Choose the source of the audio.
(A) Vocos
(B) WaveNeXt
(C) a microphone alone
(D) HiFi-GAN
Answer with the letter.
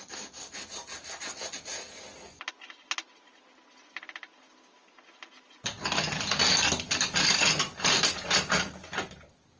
C